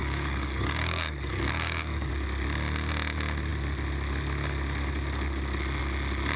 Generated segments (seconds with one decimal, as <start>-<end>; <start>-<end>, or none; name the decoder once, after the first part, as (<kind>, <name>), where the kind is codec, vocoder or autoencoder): 0.0-2.1 (codec, DAC)